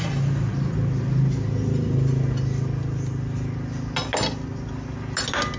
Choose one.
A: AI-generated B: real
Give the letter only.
B